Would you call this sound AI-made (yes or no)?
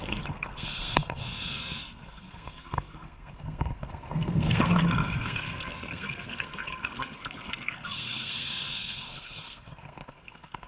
yes